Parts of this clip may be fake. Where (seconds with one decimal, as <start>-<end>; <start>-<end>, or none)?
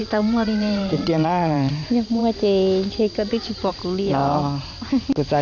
0.0-1.7